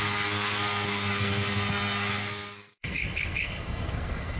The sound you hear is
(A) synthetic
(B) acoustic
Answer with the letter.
A